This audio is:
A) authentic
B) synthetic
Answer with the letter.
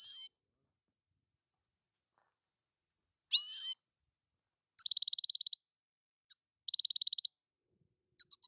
A